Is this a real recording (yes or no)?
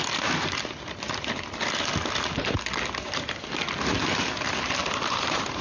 yes